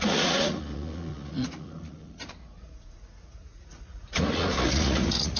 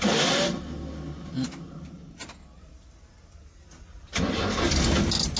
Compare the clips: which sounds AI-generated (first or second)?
first